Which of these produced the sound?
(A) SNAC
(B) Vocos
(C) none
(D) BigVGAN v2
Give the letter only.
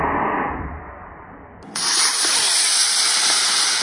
C